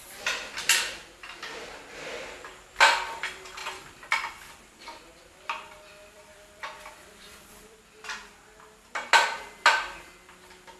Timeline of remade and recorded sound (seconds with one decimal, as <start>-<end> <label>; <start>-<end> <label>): 0.0-3.6 recorded; 3.6-7.8 remade; 7.8-10.8 recorded